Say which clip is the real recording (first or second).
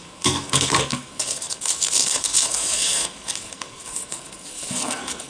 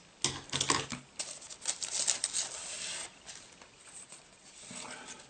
second